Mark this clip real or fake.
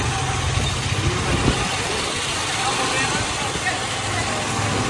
real